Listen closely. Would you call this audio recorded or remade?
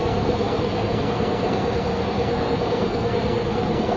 remade